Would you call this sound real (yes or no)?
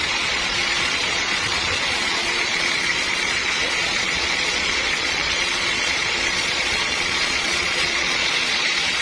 no